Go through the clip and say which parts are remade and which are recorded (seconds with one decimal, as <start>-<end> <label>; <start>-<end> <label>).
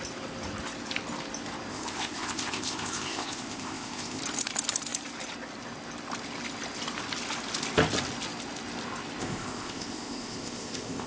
0.0-1.7 recorded; 1.7-4.2 remade; 4.2-9.2 recorded; 9.2-11.1 remade